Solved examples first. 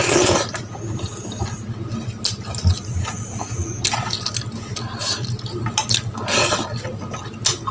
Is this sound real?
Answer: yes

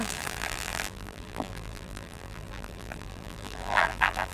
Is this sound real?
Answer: no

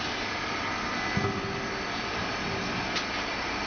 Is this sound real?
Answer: yes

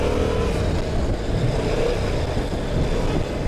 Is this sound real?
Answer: yes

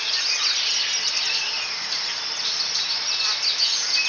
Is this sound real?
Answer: yes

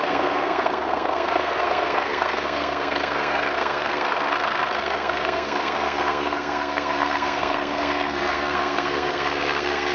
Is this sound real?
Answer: no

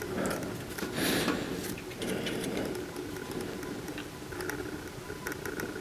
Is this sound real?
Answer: yes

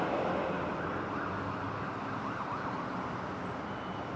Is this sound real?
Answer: yes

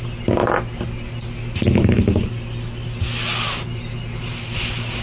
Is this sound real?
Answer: yes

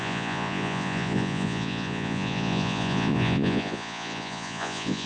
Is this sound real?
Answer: no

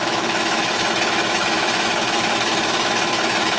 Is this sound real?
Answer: no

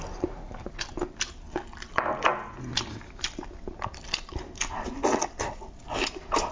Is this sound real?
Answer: yes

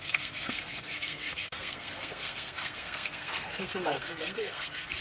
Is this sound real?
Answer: no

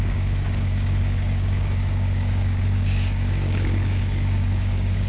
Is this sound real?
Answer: no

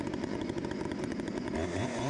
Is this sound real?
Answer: no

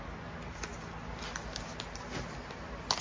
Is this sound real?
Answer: yes